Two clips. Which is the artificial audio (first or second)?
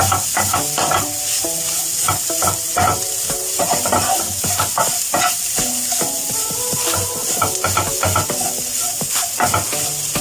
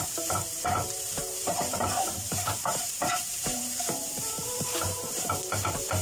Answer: second